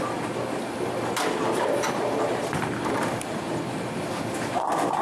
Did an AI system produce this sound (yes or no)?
no